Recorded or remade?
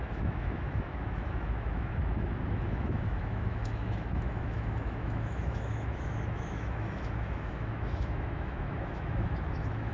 remade